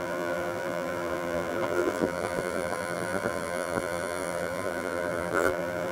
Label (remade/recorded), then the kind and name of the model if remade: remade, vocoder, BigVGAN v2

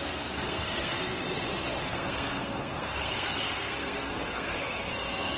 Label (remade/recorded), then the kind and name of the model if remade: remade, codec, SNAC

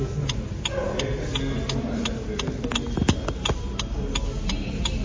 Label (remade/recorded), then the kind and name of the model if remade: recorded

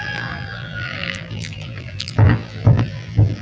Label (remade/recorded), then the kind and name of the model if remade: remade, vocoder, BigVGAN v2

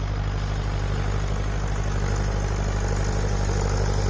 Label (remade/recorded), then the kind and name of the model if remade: recorded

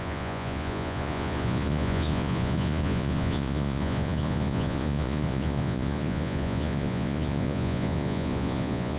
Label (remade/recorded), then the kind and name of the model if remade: remade, vocoder, Vocos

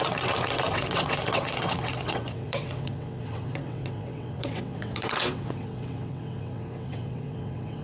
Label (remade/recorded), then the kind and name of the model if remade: remade, vocoder, WaveNeXt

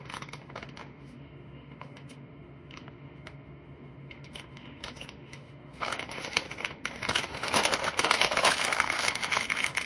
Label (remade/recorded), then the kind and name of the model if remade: remade, autoencoder, DAC-VAE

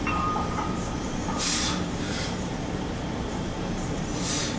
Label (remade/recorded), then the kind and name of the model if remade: remade, vocoder, BigVGAN v2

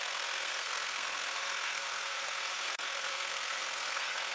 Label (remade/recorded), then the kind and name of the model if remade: remade, codec, SNAC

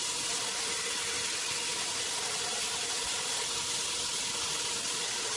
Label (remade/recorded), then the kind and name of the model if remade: recorded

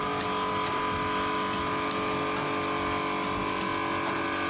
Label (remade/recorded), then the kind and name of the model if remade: recorded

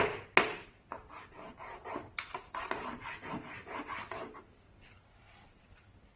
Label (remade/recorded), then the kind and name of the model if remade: recorded